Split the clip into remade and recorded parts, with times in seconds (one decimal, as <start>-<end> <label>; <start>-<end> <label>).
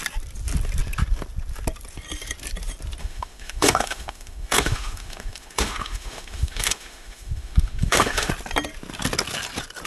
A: 0.0-3.0 recorded; 3.0-8.3 remade; 8.3-9.9 recorded